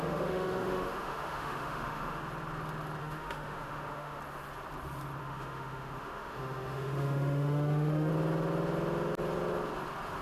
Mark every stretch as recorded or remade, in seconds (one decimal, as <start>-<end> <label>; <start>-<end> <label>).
0.0-2.2 remade; 2.2-3.0 recorded; 3.0-4.2 remade; 4.2-5.2 recorded; 5.2-8.1 remade; 8.1-10.2 recorded